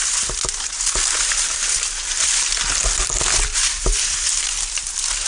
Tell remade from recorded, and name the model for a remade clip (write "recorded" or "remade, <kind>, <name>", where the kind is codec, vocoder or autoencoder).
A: recorded